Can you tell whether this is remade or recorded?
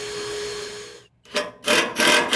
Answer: recorded